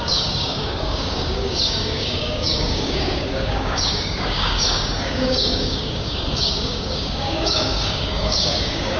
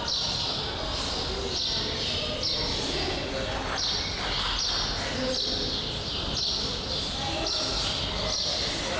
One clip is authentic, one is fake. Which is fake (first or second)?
first